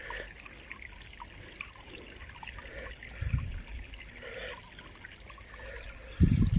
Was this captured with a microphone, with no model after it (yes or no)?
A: yes